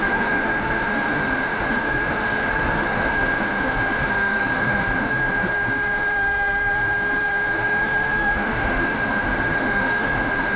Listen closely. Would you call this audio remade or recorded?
remade